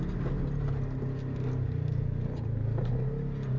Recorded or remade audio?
recorded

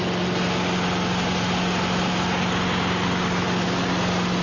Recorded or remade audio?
recorded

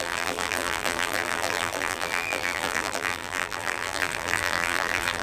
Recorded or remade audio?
remade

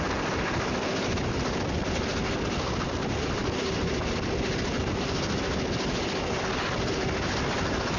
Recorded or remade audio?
recorded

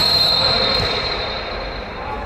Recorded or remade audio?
remade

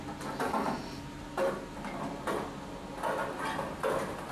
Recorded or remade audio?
recorded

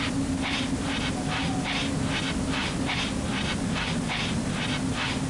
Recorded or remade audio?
recorded